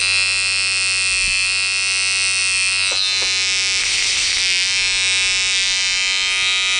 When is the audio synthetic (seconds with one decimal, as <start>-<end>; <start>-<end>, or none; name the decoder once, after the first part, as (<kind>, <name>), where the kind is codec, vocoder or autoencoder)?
3.8-4.4 (codec, HILCodec)